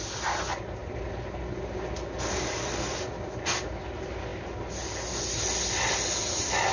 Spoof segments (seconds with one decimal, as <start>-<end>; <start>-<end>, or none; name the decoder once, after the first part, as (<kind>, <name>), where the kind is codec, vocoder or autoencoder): none